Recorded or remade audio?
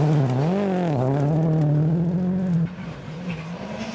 recorded